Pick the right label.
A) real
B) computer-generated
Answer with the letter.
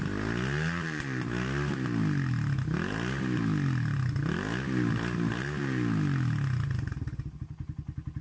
A